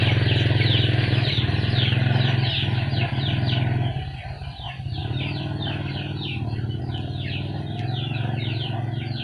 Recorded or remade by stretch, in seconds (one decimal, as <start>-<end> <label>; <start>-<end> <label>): 0.0-9.2 recorded